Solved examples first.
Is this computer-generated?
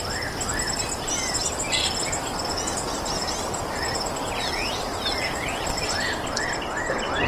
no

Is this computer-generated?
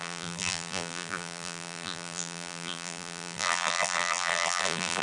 yes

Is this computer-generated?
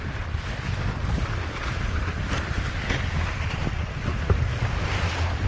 no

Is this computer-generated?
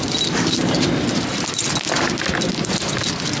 no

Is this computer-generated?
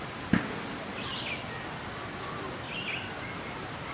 no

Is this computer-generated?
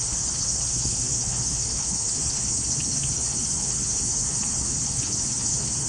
yes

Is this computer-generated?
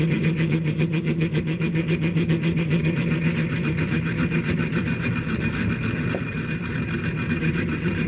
yes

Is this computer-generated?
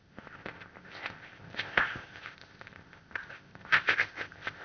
yes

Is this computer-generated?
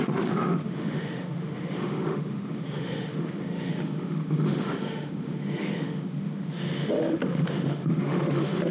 yes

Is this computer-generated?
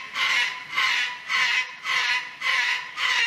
no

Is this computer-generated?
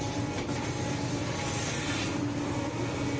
no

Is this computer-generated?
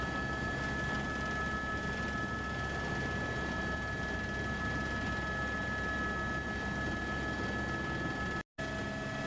no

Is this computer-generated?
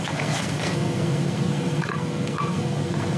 yes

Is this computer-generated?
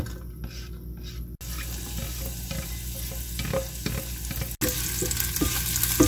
no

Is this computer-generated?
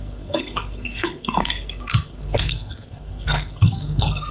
yes